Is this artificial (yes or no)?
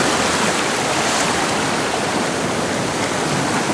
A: no